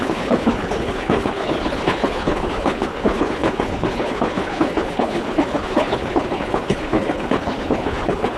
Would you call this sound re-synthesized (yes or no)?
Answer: yes